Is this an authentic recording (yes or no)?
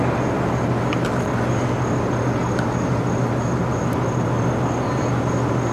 yes